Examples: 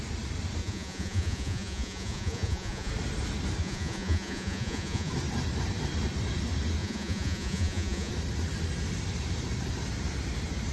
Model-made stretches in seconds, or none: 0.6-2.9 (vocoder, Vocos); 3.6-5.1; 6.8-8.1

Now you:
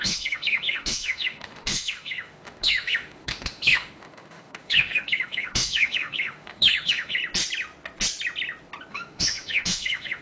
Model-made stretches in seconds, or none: 0.0-7.2 (autoencoder, DAC-VAE); 8.9-10.2

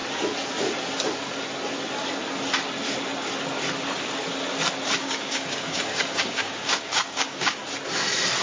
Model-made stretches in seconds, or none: 5.0-7.6 (codec, DAC)

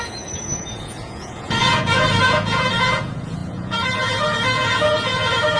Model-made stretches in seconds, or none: 0.0-5.6 (vocoder, Vocos)

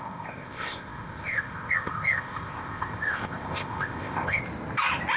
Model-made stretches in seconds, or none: 0.0-4.4 (codec, ZipCodec)